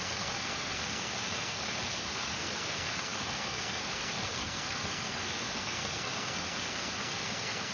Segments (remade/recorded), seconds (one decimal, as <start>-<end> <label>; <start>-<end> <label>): 0.0-7.7 remade